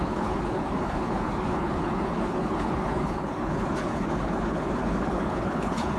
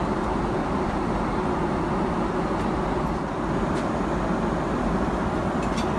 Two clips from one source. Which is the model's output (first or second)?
first